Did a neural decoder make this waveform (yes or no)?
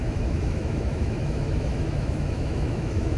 yes